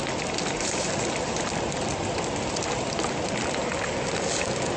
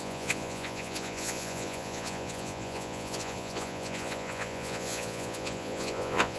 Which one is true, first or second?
first